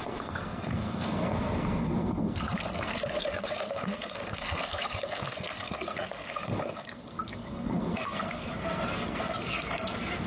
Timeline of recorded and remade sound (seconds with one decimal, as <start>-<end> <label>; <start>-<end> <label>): 0.0-10.3 remade